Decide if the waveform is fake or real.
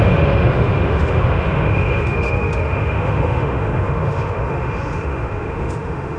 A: fake